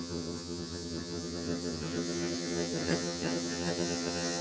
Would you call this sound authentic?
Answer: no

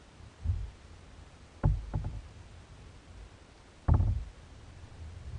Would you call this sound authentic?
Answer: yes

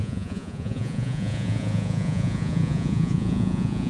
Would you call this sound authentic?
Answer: no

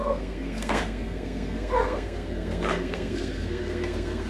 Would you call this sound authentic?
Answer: no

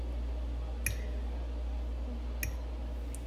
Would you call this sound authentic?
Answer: yes